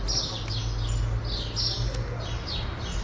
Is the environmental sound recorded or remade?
recorded